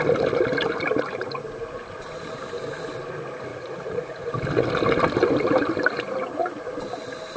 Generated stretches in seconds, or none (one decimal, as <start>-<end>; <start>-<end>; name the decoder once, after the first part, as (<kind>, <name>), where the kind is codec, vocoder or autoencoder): 3.5-4.3 (vocoder, Vocos)